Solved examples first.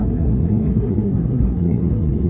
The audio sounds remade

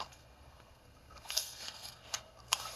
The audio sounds remade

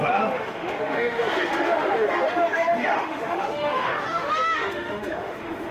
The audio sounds remade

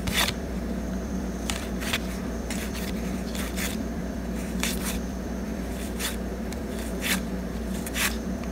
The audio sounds remade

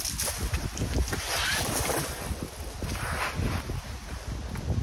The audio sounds recorded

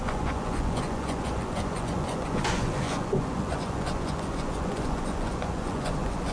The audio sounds remade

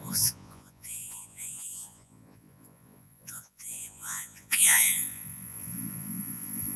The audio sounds remade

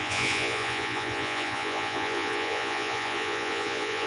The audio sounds remade